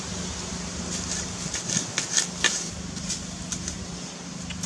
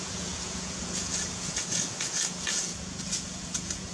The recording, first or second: first